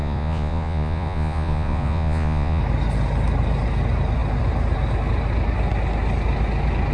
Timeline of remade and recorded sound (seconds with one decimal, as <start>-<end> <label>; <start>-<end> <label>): 0.0-2.6 remade; 2.6-6.9 recorded